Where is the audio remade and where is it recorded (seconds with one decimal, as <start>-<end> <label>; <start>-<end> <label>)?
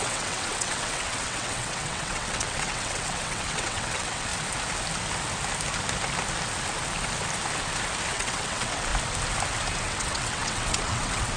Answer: 0.0-4.3 remade; 4.3-8.1 recorded; 8.1-8.9 remade; 8.9-9.8 recorded; 9.8-11.4 remade